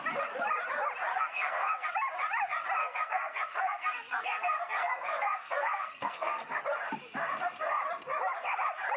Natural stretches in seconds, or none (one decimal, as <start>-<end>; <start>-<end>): 0.0-1.1; 1.9-2.8; 6.6-9.0